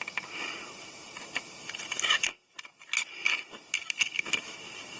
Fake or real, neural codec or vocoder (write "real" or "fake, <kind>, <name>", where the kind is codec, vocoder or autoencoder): real